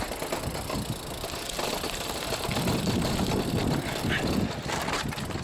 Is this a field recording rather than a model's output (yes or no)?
yes